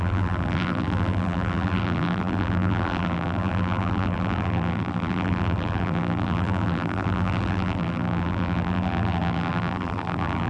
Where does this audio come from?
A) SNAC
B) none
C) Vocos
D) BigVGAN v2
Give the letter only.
D